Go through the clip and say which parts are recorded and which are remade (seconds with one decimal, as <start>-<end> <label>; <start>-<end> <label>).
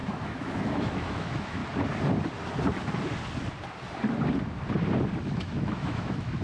0.0-1.6 remade; 1.6-5.2 recorded; 5.2-6.4 remade